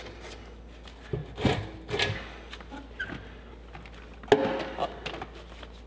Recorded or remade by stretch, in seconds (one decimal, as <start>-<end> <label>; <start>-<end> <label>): 0.0-5.9 recorded